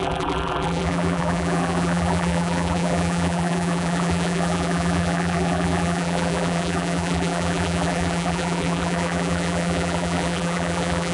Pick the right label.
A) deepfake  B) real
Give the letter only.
A